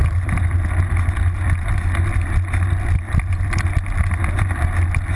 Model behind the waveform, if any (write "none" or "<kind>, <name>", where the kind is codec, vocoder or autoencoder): none